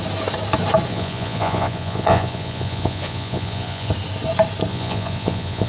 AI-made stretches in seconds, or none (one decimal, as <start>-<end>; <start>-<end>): 0.9-3.9; 4.7-5.7